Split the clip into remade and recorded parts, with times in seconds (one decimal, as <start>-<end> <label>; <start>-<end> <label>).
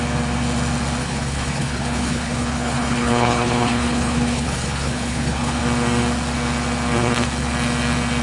0.0-1.0 recorded; 1.0-5.6 remade; 5.6-8.2 recorded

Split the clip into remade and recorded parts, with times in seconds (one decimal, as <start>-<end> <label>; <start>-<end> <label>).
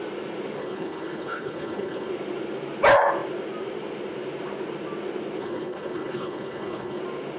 0.0-0.6 recorded; 0.6-2.1 remade; 2.1-5.4 recorded; 5.4-7.0 remade; 7.0-7.4 recorded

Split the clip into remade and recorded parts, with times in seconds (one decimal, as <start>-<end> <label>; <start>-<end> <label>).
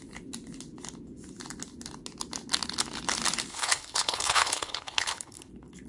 0.0-3.5 recorded; 3.5-5.5 remade; 5.5-5.9 recorded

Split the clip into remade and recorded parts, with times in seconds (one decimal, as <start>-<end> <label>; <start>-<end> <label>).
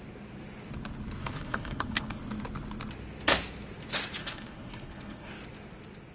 0.0-1.2 recorded; 1.2-2.2 remade; 2.2-4.2 recorded; 4.2-5.3 remade; 5.3-6.1 recorded